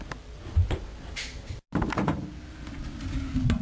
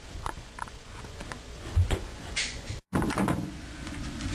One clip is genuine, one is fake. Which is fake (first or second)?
second